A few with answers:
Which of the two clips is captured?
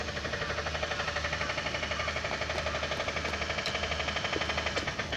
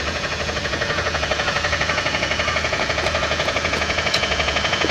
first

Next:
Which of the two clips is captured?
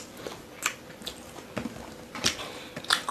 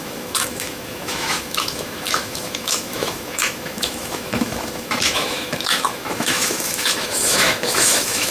first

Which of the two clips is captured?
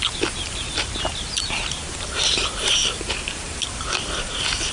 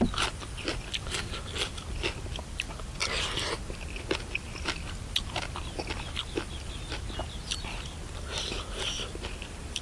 second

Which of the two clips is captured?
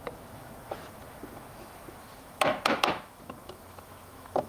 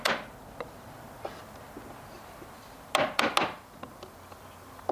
second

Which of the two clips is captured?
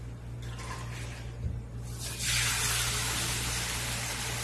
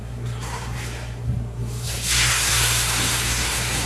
first